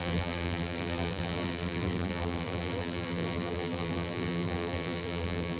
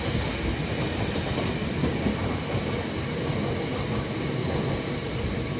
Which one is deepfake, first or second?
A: first